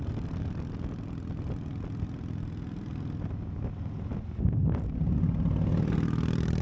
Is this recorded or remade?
recorded